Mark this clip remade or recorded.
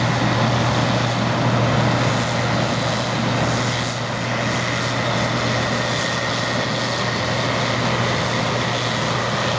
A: recorded